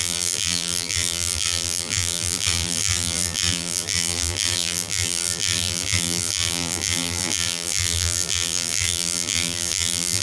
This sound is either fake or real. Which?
fake